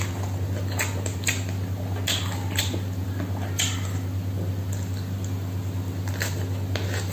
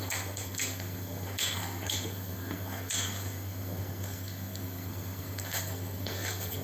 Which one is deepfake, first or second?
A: second